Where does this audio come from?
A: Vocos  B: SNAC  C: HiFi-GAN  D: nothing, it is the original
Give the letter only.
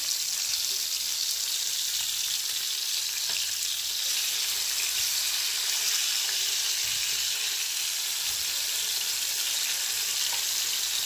D